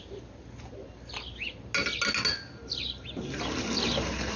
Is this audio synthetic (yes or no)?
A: no